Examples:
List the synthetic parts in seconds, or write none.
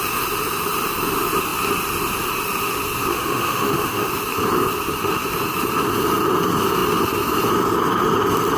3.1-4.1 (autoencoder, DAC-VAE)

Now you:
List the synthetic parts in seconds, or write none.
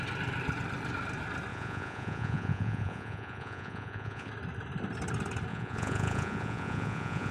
1.5-4.3 (vocoder, Vocos); 5.5-7.3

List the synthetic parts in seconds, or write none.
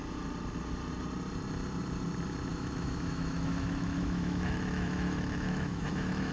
2.5-6.3 (autoencoder, DAC-VAE)